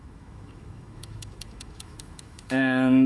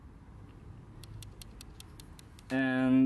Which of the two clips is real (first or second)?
second